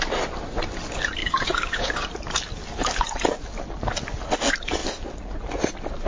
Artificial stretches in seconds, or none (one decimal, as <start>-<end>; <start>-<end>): 1.2-1.9